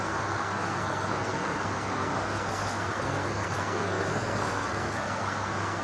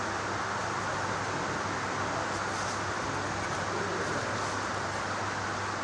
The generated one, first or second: first